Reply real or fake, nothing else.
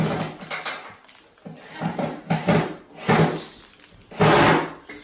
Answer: real